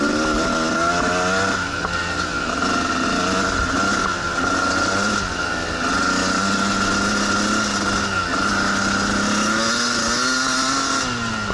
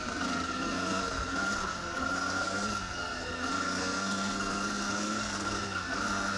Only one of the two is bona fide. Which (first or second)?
first